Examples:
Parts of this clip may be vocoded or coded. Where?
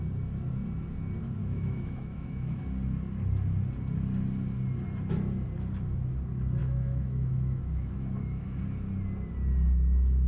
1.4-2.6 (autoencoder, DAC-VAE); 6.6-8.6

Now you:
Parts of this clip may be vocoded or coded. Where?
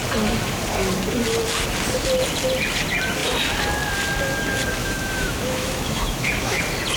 4.8-6.6 (autoencoder, DAC-VAE)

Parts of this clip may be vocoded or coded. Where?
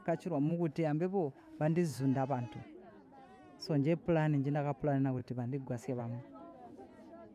0.5-2.0 (autoencoder, DAC-VAE); 5.2-6.0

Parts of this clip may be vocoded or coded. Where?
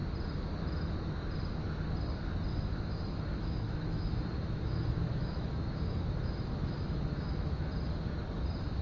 2.5-7.7 (autoencoder, DAC-VAE)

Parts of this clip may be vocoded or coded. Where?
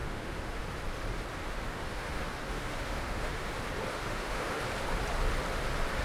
0.0-0.6 (autoencoder, DAC-VAE); 1.4-3.5; 3.9-4.6